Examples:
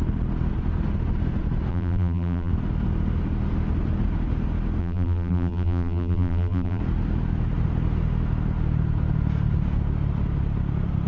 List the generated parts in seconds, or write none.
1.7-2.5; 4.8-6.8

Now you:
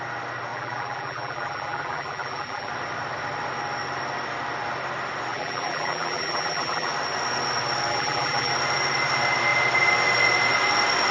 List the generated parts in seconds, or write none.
0.5-2.7; 5.3-6.9; 7.9-8.5